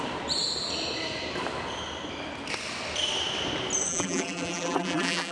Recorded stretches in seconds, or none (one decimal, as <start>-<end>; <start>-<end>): 0.0-3.9